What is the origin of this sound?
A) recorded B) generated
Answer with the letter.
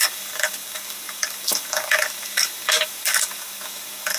B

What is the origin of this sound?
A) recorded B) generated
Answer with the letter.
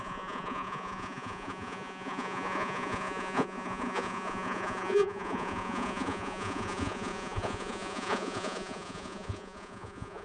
B